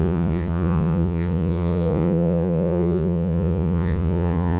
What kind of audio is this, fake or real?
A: fake